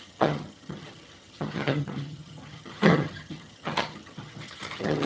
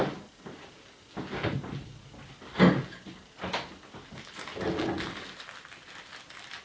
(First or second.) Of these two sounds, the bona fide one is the second